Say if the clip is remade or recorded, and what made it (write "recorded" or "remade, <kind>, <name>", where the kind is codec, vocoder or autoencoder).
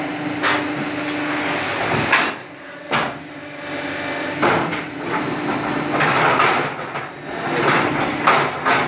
recorded